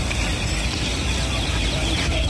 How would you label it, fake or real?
real